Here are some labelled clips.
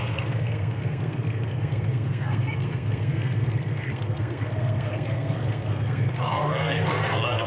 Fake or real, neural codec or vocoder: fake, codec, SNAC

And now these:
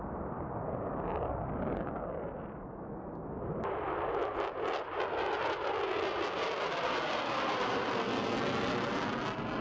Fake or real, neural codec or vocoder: real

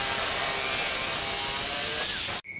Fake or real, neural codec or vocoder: real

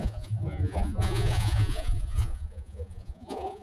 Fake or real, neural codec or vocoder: fake, vocoder, Vocos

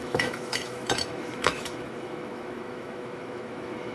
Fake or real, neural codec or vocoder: fake, autoencoder, DAC-VAE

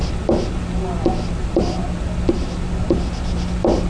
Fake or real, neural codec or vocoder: real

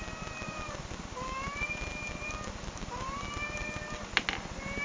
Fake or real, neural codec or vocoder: real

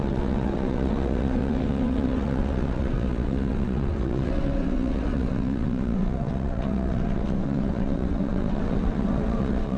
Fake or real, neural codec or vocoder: fake, vocoder, WaveNeXt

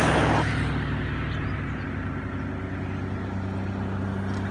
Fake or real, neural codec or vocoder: real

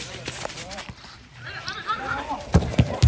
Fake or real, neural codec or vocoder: fake, vocoder, BigVGAN v2